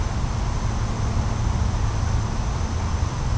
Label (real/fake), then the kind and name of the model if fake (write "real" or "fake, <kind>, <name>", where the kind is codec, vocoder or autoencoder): real